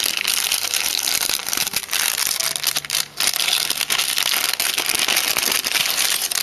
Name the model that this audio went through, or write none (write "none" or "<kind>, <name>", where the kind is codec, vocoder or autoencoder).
none